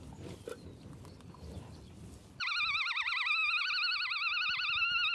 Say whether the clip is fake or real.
real